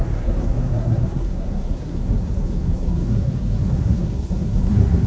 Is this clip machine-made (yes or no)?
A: yes